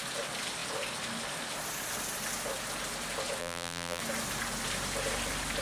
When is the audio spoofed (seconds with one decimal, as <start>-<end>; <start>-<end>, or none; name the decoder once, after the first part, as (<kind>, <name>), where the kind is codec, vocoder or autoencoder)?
3.4-4.0 (vocoder, BigVGAN v2)